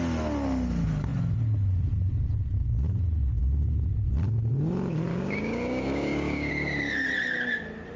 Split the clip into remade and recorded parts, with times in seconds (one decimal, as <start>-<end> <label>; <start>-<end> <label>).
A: 0.0-5.1 recorded; 5.1-6.5 remade; 6.5-8.0 recorded